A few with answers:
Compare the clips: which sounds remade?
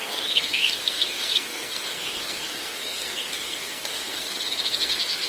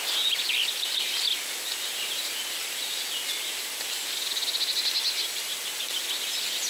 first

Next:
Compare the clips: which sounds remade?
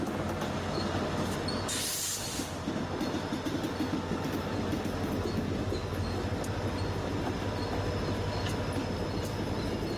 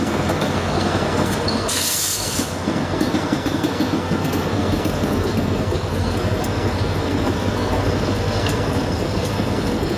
second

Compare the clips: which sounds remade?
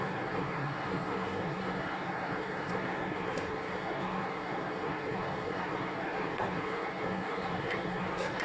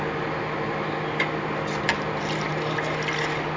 first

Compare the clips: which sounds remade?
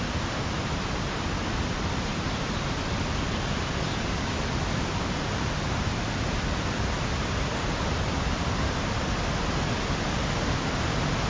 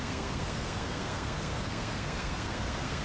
second